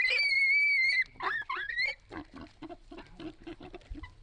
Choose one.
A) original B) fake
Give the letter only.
A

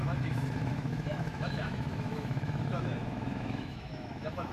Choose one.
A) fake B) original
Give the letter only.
A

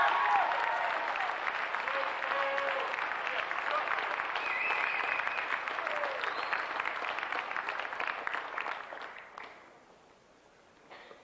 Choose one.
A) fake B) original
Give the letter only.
B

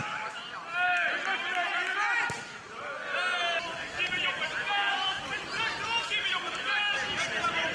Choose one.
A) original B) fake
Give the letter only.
A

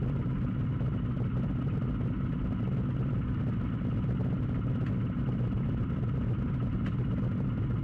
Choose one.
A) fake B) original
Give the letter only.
B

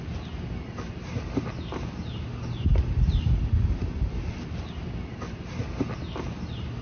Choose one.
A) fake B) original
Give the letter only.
B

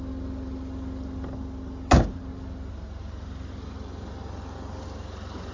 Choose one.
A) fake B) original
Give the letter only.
B